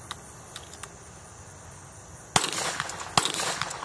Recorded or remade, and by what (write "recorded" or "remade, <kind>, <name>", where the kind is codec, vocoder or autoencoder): recorded